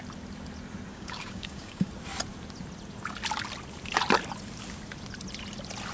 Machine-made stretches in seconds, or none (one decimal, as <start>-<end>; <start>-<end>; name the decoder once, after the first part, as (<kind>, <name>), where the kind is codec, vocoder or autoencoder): 0.9-1.9 (codec, DAC)